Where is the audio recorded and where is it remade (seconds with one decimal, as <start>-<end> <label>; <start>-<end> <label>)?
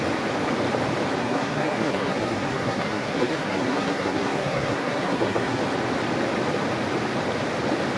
0.0-1.2 recorded; 1.2-5.6 remade; 5.6-8.0 recorded